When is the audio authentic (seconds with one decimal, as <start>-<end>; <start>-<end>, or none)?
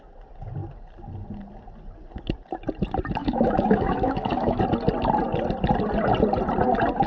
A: 0.0-3.2; 4.6-7.1